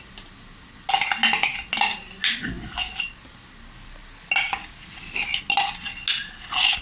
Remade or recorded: recorded